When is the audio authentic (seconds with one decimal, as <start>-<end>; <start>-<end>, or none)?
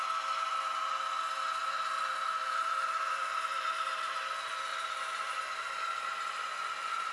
0.0-1.6; 4.1-4.7; 5.7-7.1